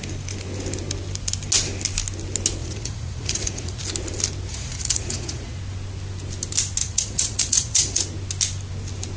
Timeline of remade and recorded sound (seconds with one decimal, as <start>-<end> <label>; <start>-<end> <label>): 0.0-2.6 recorded; 2.6-3.8 remade; 3.8-4.5 recorded; 4.5-5.6 remade; 5.6-6.8 recorded; 6.8-8.0 remade; 8.0-9.2 recorded